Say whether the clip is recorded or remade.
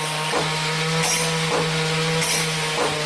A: recorded